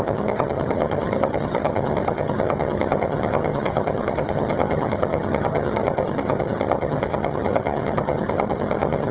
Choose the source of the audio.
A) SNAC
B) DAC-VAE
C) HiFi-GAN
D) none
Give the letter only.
C